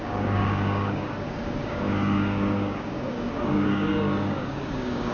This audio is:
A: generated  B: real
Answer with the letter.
A